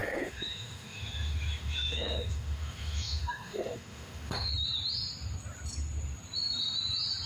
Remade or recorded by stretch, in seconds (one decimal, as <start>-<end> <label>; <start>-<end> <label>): 0.0-4.5 remade; 4.5-7.3 recorded